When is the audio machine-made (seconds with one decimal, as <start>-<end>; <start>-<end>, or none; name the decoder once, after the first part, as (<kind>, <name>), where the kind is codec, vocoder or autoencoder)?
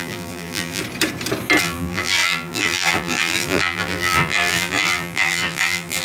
0.0-0.8 (vocoder, BigVGAN v2); 1.6-6.0